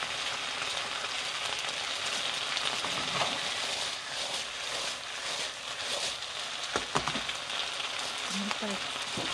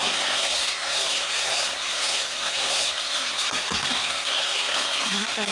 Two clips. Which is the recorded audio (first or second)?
first